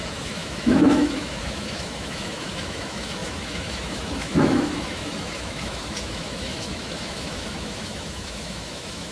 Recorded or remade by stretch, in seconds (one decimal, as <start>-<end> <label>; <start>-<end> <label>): 0.0-9.1 remade